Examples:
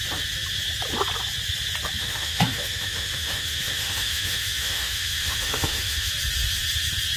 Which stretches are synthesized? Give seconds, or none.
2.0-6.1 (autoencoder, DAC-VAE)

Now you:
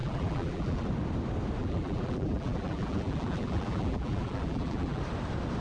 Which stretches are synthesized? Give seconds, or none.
0.0-0.9 (vocoder, BigVGAN v2); 1.6-5.0